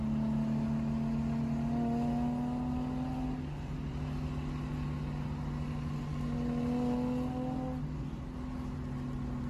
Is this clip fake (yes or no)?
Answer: no